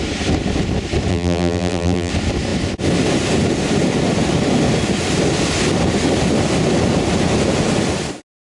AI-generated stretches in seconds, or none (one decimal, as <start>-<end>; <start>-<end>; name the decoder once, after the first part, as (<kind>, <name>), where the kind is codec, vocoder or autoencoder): 1.1-2.1 (vocoder, BigVGAN v2)